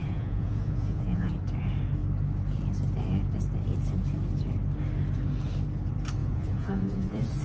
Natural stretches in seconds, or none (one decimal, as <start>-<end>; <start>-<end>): 1.3-6.2